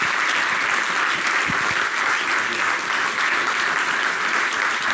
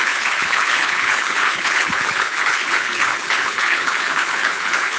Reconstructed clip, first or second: second